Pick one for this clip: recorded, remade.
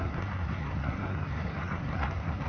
remade